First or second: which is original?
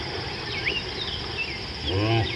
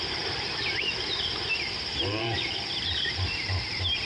first